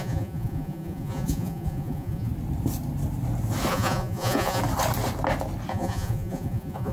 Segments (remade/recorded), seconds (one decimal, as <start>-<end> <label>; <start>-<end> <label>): 0.0-2.3 remade; 2.3-3.7 recorded; 3.7-4.6 remade; 4.6-5.7 recorded; 5.7-6.9 remade